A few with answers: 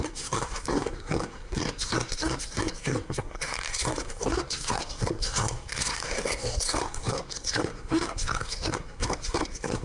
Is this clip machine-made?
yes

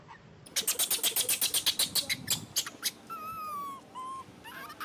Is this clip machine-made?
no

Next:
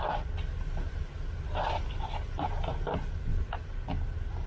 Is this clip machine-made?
no